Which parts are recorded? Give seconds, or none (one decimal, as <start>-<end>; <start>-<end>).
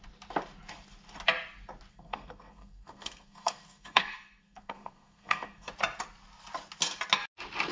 0.0-1.9; 5.7-7.7